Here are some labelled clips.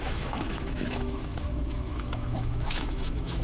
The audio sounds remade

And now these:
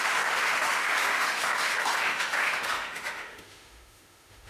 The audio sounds remade